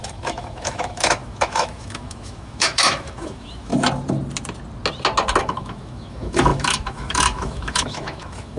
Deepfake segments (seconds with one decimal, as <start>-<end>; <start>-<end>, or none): 0.0-3.7; 5.4-8.6

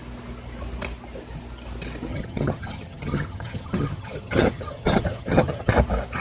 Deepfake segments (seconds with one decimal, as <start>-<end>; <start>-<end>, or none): 2.1-5.7

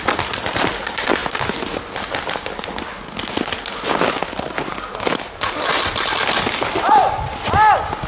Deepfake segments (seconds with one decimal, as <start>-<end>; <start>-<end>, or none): 4.7-5.7

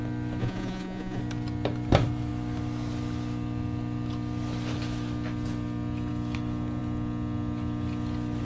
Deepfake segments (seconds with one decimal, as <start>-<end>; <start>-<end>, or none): 0.4-1.2